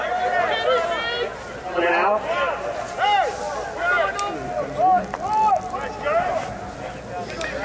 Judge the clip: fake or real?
real